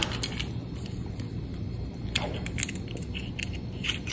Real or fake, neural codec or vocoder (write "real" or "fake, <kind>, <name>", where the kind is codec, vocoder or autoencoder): real